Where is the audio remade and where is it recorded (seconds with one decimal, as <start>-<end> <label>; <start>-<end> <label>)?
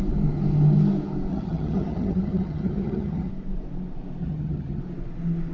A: 0.0-1.3 recorded; 1.3-3.3 remade; 3.3-4.2 recorded; 4.2-4.8 remade; 4.8-5.5 recorded